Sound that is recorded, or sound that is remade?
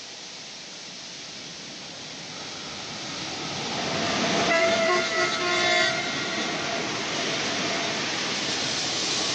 recorded